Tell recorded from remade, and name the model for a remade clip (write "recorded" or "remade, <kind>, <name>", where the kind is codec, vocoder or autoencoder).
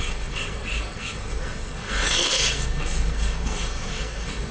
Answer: remade, codec, SNAC